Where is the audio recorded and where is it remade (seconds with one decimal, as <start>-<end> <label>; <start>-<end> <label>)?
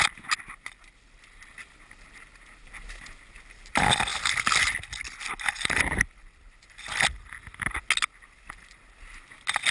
0.0-9.7 recorded